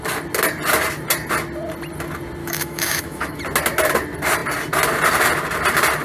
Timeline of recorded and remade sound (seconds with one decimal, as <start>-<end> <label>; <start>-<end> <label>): 0.0-2.4 recorded; 2.4-3.4 remade; 3.4-6.0 recorded

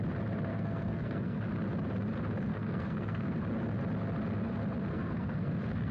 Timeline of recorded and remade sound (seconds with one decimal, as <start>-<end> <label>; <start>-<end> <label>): 0.0-0.5 recorded; 0.5-1.4 remade; 1.4-2.5 recorded; 2.5-3.4 remade; 3.4-4.9 recorded; 4.9-5.9 remade

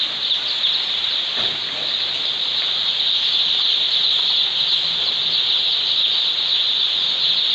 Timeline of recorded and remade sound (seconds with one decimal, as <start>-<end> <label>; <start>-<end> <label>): 0.0-3.3 recorded; 3.3-4.2 remade; 4.2-7.5 recorded

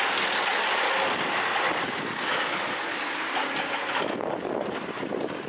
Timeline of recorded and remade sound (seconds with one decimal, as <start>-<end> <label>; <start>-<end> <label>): 0.0-5.5 recorded